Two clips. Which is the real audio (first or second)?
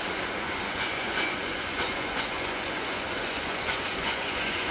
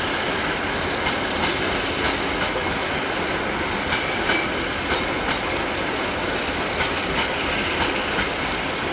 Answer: second